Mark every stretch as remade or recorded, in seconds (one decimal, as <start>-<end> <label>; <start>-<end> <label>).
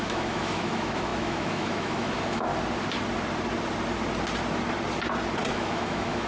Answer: 0.0-2.5 remade; 2.5-5.5 recorded; 5.5-6.3 remade